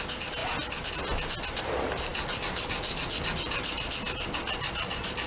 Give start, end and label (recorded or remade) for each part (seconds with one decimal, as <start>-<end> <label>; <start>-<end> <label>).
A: 0.0-5.3 recorded